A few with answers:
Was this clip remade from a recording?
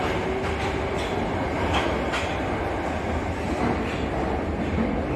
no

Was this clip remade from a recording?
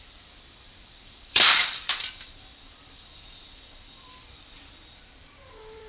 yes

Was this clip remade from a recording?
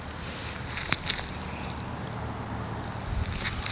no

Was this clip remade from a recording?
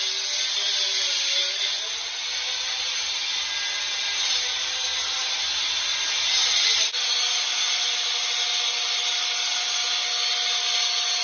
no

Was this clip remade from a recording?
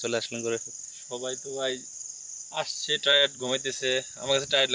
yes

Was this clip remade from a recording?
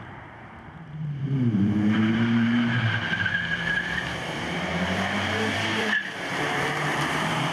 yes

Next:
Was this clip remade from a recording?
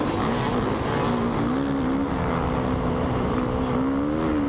no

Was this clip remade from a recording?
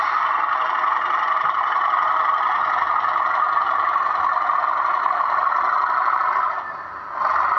no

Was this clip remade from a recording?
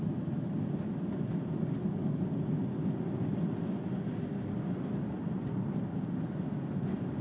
no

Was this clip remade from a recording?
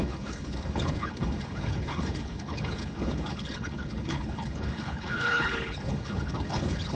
yes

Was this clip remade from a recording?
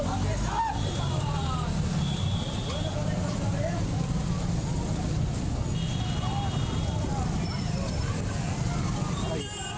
no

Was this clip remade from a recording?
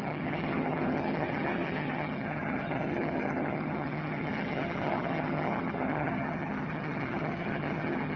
yes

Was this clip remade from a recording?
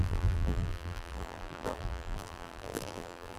yes